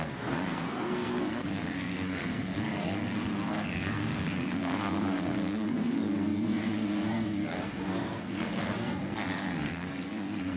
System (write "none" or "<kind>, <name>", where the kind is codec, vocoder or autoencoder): codec, SNAC